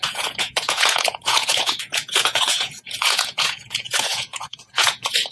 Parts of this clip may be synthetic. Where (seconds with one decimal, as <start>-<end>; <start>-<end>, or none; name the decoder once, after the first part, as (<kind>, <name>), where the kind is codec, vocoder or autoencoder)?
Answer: 0.0-5.3 (vocoder, Vocos)